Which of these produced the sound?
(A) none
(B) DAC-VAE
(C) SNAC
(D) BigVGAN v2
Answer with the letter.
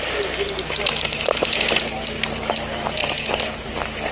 A